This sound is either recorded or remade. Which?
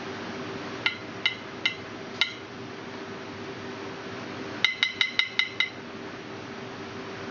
recorded